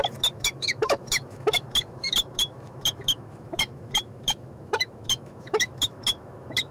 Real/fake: fake